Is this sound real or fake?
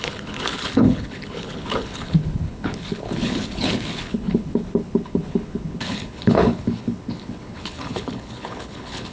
fake